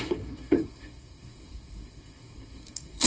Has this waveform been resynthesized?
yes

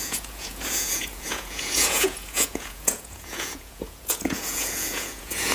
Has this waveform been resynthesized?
yes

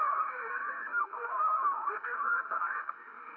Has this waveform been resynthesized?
yes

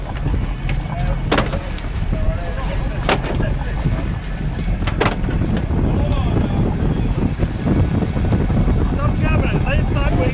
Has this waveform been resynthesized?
no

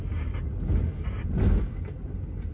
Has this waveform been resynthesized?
no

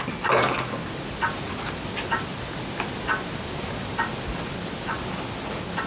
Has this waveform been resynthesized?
no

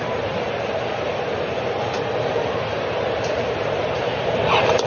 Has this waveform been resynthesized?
yes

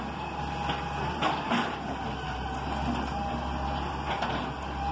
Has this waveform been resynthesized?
no